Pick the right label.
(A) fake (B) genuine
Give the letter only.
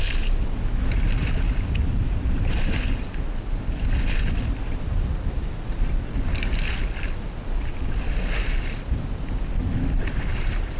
B